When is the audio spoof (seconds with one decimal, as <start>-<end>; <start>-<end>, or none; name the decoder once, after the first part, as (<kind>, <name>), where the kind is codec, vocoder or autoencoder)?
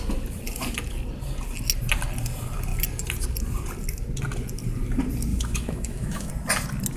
5.3-6.3 (autoencoder, DAC-VAE)